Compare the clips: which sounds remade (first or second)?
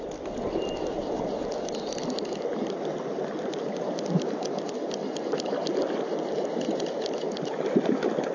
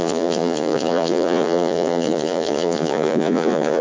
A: second